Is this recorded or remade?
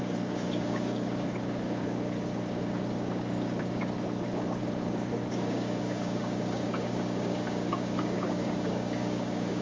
remade